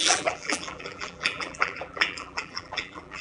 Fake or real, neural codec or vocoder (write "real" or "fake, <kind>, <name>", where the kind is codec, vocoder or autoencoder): fake, vocoder, BigVGAN v2